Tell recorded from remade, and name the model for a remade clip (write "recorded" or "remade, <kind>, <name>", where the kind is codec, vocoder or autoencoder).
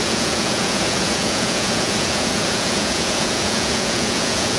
remade, vocoder, Vocos